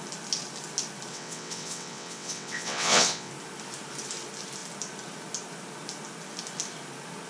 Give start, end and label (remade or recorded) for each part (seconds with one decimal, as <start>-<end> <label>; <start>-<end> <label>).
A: 0.0-1.1 recorded; 1.1-3.3 remade; 3.3-7.3 recorded